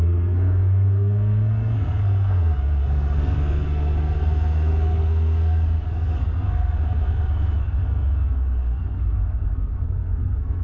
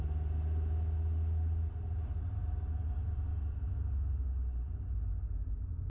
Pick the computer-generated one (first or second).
first